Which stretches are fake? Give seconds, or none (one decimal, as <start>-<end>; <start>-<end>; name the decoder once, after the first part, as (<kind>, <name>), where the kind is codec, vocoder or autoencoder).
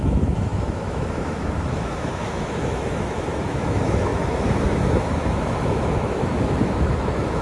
0.0-7.4 (autoencoder, DAC-VAE)